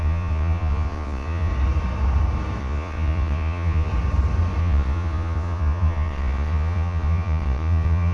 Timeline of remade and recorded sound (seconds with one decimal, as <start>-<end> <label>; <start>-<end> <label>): 0.0-1.5 remade; 1.5-2.6 recorded; 2.6-3.9 remade; 3.9-4.6 recorded; 4.6-8.1 remade